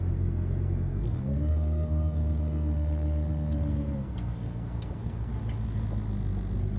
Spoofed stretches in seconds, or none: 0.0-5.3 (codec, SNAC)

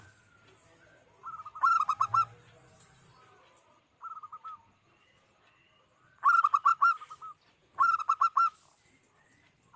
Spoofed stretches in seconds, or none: none

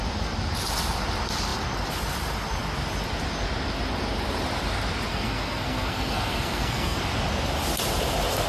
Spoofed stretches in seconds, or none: 5.1-7.0 (codec, SNAC)